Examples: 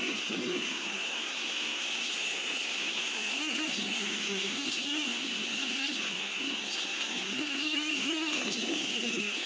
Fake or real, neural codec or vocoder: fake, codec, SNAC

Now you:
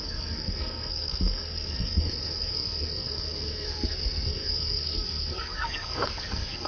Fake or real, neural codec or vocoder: fake, codec, SNAC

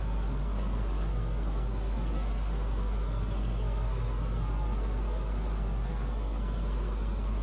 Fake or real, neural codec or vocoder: fake, codec, SNAC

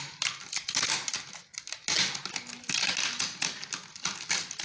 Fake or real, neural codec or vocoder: real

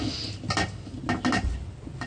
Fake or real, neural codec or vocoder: real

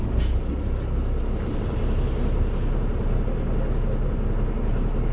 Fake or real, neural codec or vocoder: real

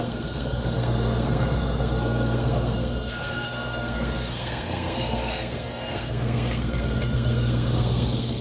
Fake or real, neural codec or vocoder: fake, codec, SNAC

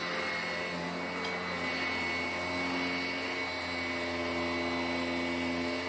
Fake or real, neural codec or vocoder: real